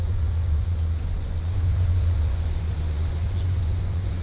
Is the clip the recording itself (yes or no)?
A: no